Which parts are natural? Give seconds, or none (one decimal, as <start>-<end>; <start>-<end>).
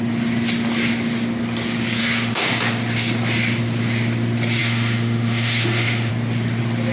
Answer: 0.0-2.0; 2.5-4.6; 6.1-6.9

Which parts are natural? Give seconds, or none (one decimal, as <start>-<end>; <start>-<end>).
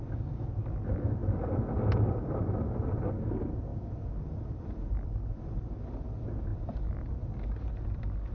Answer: 0.0-1.2; 2.4-3.7; 5.8-6.5; 7.0-8.3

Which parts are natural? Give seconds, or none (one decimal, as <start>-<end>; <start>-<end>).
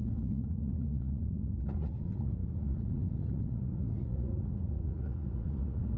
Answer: none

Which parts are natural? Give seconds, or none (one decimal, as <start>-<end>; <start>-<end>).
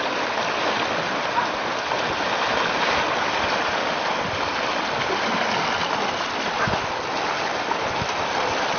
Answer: 0.0-8.8